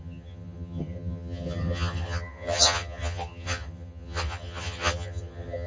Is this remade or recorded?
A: remade